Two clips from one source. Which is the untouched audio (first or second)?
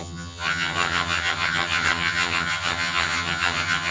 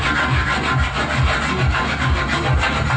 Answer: second